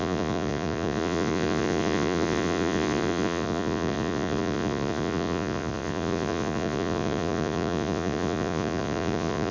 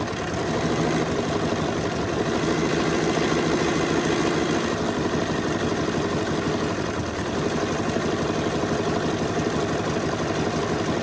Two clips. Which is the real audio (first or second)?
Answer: second